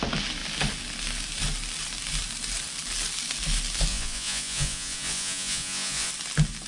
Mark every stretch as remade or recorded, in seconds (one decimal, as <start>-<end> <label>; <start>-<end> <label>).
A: 0.0-3.9 recorded; 3.9-6.1 remade; 6.1-6.7 recorded